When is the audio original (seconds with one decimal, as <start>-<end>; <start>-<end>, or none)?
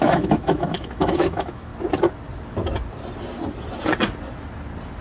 1.7-5.0